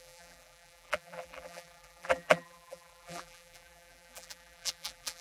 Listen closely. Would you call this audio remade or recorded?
remade